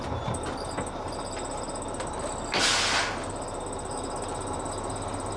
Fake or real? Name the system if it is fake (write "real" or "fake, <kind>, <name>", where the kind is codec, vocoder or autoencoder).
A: real